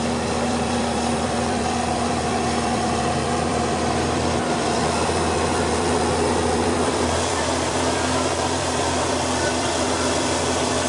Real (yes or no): no